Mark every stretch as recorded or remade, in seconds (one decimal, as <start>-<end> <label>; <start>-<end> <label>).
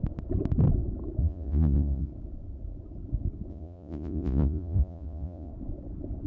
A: 0.0-1.2 recorded; 1.2-2.1 remade; 2.1-3.5 recorded; 3.5-5.5 remade; 5.5-6.3 recorded